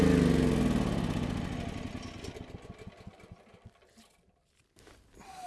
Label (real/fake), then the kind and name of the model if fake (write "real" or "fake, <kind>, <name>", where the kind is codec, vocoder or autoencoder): real